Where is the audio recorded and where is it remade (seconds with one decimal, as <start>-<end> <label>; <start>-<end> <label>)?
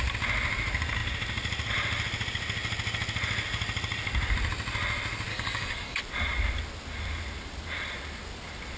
0.0-5.3 recorded; 5.3-6.0 remade; 6.0-8.8 recorded